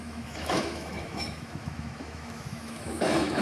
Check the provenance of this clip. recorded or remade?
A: remade